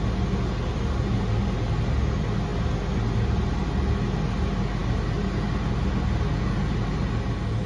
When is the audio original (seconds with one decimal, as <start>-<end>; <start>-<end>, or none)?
0.0-7.7